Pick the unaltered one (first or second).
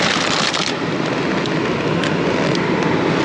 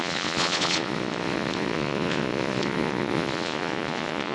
first